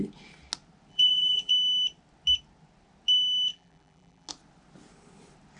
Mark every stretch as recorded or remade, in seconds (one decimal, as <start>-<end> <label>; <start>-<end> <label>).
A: 0.0-0.9 recorded; 0.9-1.5 remade; 1.5-3.5 recorded; 3.5-4.3 remade; 4.3-5.6 recorded